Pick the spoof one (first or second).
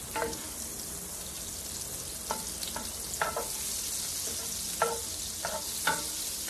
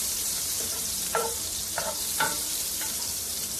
second